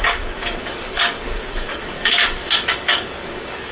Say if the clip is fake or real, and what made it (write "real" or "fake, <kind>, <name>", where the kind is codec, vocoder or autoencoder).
fake, codec, DAC